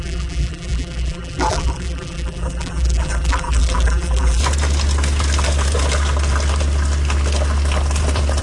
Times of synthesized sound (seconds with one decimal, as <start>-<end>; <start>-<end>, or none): 0.0-4.4